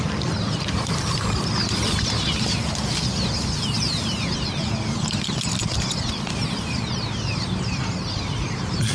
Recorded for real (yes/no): no